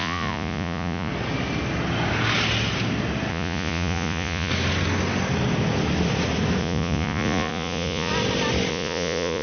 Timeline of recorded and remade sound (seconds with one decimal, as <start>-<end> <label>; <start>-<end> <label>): 0.0-1.1 remade; 1.1-3.3 recorded; 3.3-4.5 remade; 4.5-6.6 recorded; 6.6-8.1 remade; 8.1-8.7 recorded; 8.7-9.4 remade